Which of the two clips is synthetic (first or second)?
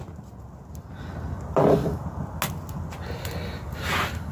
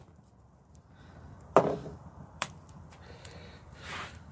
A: second